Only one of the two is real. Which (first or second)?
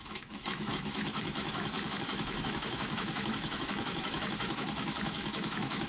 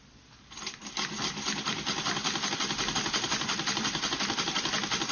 second